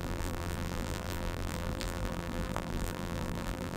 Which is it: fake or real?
fake